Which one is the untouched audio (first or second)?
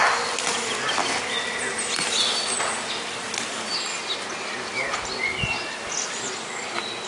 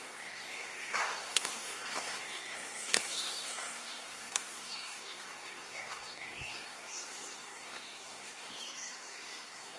first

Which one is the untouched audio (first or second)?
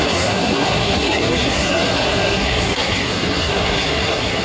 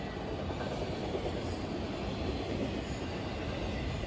second